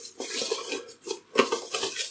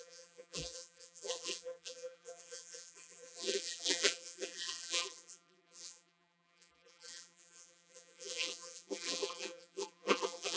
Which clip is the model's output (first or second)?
second